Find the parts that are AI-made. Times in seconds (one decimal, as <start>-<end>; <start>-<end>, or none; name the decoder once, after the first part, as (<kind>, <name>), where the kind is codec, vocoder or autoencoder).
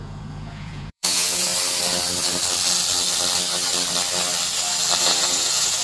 0.0-1.5 (vocoder, Vocos); 5.0-5.8